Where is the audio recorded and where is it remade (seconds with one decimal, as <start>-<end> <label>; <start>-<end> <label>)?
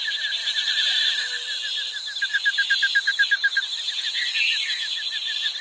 0.0-5.6 recorded